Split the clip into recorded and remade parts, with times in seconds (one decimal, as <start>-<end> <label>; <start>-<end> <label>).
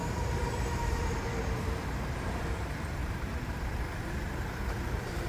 0.0-5.3 remade